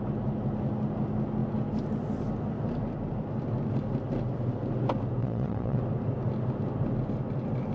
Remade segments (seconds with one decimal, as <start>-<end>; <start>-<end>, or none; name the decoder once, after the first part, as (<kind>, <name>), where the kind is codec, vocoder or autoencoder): 5.2-5.8 (vocoder, WaveNeXt)